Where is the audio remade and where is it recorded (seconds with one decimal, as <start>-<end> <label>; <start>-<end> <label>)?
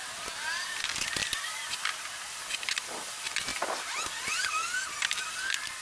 0.0-1.2 recorded; 1.2-3.1 remade; 3.1-3.5 recorded; 3.5-4.3 remade; 4.3-5.8 recorded